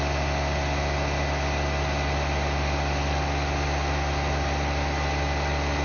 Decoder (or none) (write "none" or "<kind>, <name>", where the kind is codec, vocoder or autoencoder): none